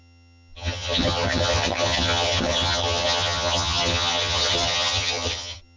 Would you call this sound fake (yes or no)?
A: yes